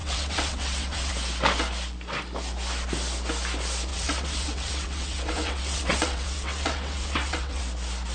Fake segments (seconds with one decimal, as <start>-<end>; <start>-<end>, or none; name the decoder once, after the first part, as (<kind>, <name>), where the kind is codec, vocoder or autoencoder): 0.0-1.1 (vocoder, WaveNeXt); 3.9-7.6